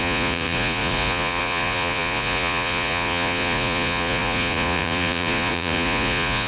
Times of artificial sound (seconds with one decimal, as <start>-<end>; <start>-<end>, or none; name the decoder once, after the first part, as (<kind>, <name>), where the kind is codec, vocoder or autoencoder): 0.0-6.5 (vocoder, Vocos)